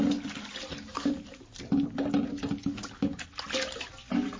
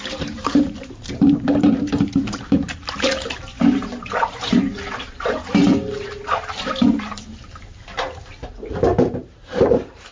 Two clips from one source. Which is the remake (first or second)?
second